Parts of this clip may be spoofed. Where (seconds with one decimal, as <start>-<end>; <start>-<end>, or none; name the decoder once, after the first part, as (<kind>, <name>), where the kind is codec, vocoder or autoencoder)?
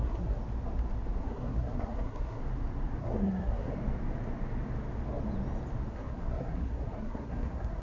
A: 0.0-0.4 (codec, SNAC); 1.2-2.4; 3.0-3.7; 5.9-7.8